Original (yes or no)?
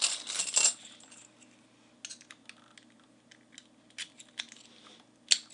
yes